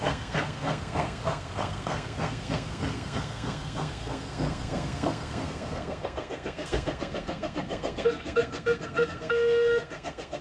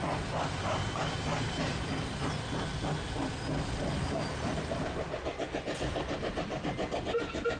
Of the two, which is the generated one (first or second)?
first